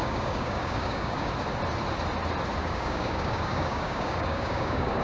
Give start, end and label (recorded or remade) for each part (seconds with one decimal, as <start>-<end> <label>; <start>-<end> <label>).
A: 0.0-1.3 remade; 1.3-2.6 recorded; 2.6-5.0 remade